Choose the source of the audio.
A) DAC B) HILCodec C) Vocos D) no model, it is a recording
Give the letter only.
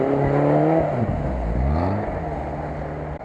D